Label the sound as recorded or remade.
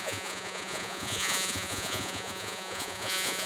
remade